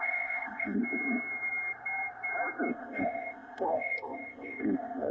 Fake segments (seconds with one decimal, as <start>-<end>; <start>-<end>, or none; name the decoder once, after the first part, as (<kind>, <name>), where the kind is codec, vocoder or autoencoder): 0.0-0.8 (codec, ZipCodec); 2.7-5.1